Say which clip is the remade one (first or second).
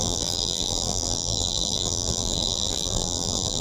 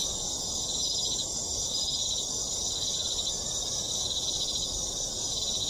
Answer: first